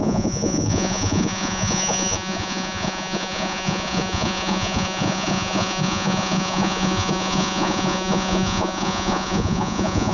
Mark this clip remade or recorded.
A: remade